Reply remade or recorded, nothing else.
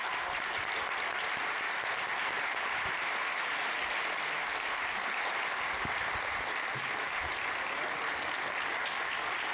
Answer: recorded